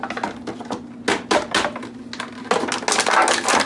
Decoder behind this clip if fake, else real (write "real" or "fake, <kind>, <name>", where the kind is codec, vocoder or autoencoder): real